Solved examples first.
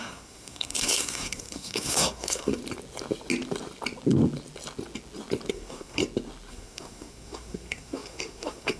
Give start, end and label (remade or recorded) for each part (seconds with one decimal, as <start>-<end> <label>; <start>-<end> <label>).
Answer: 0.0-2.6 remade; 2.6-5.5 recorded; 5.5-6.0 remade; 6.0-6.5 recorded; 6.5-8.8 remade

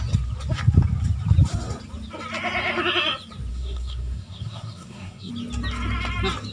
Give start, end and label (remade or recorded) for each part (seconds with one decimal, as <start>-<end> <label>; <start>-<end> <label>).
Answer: 0.0-3.5 recorded; 3.5-5.3 remade; 5.3-6.5 recorded

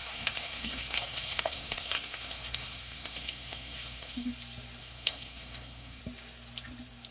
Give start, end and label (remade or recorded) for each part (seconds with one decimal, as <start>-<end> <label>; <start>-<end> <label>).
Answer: 0.0-4.3 remade; 4.3-4.8 recorded; 4.8-6.0 remade; 6.0-7.1 recorded